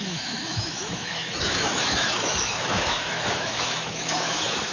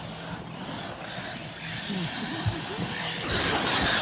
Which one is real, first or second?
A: second